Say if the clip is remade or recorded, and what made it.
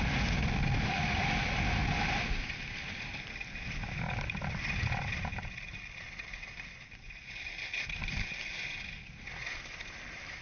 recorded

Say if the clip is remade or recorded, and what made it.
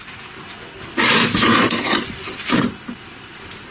recorded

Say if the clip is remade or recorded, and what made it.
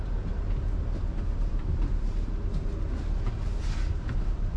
recorded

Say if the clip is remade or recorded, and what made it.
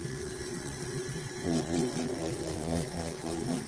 remade, vocoder, WaveNeXt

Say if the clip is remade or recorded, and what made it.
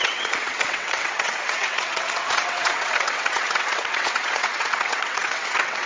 remade, vocoder, WaveNeXt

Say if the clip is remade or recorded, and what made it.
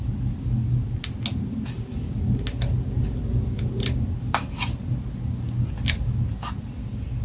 recorded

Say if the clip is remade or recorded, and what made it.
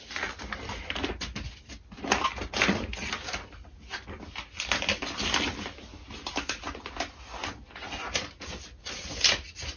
recorded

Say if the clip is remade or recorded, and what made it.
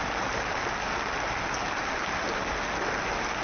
recorded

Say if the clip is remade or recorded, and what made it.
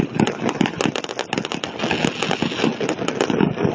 recorded